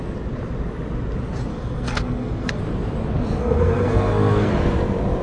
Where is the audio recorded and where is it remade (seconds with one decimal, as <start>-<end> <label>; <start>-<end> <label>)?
0.0-1.5 recorded; 1.5-2.6 remade; 2.6-3.4 recorded; 3.4-4.5 remade; 4.5-5.2 recorded